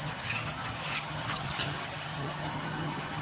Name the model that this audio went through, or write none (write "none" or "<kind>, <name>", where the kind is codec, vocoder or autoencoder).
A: vocoder, HiFi-GAN